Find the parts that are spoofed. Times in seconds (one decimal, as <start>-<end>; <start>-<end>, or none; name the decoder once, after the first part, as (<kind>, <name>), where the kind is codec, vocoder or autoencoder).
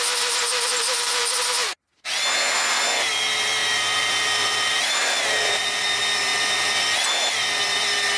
0.0-1.2 (vocoder, BigVGAN v2); 3.0-6.3; 7.1-8.2